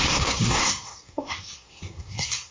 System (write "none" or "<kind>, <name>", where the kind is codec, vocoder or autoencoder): codec, SNAC